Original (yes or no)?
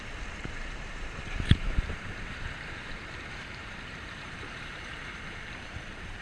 no